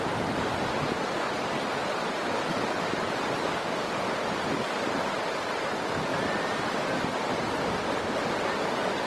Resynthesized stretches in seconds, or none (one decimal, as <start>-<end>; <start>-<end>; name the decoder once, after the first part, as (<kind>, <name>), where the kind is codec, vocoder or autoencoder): none